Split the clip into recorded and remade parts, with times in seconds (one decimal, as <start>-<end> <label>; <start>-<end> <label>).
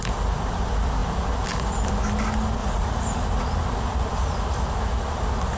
0.0-2.6 recorded; 2.6-3.3 remade; 3.3-5.6 recorded